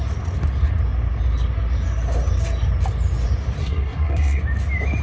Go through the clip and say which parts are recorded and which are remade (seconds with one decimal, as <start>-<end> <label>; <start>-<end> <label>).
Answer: 0.0-3.6 recorded; 3.6-4.4 remade; 4.4-5.0 recorded